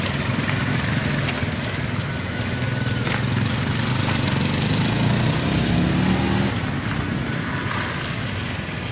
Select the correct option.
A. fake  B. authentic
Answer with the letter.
B